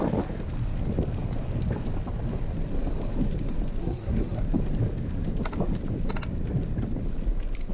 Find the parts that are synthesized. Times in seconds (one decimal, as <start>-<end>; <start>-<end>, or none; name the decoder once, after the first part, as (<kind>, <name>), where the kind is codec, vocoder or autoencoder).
3.8-4.4 (codec, SNAC)